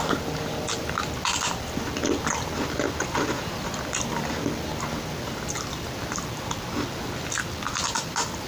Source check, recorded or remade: recorded